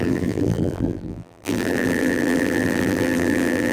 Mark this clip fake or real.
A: fake